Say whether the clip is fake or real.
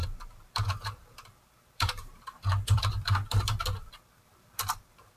fake